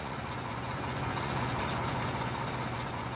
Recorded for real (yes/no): no